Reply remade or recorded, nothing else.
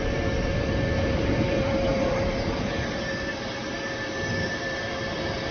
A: remade